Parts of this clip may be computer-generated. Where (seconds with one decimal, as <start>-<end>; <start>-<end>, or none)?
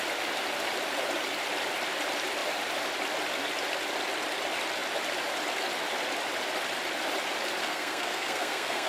7.6-8.9